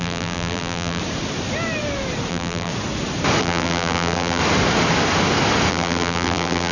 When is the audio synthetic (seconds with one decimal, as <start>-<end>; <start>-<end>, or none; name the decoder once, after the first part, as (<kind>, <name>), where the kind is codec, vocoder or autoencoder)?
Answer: 0.0-1.0 (vocoder, BigVGAN v2); 2.3-2.7; 3.4-4.4; 5.7-6.7